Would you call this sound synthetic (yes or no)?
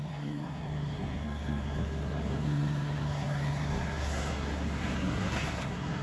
yes